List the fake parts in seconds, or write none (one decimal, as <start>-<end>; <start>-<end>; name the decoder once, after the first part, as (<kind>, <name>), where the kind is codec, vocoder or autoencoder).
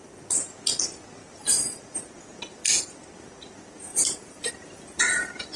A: 1.2-1.8 (vocoder, BigVGAN v2); 3.9-4.5